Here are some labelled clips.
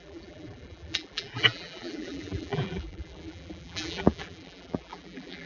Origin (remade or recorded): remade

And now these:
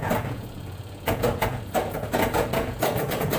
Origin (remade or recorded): remade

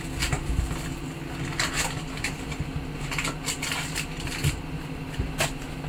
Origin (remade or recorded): recorded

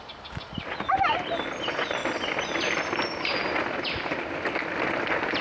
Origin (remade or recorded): recorded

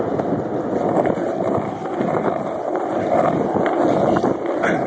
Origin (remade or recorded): recorded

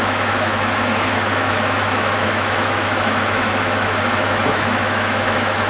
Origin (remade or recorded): remade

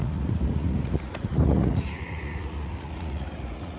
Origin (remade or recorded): remade